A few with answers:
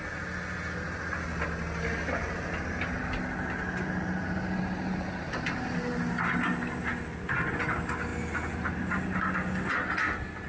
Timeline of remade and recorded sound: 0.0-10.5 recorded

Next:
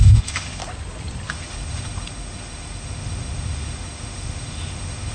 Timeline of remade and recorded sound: 0.0-0.6 remade; 0.6-1.3 recorded; 1.3-5.1 remade

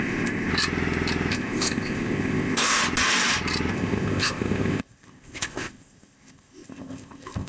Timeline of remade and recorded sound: 0.0-0.5 remade; 0.5-1.3 recorded; 1.3-2.8 remade; 2.8-3.7 recorded; 3.7-7.5 remade

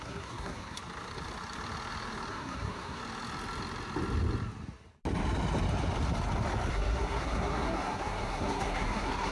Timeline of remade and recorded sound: 0.0-0.8 remade; 0.8-2.3 recorded; 2.3-3.0 remade; 3.0-6.7 recorded; 6.7-9.3 remade